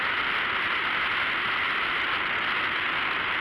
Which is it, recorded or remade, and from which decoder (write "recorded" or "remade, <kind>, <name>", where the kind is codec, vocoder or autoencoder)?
recorded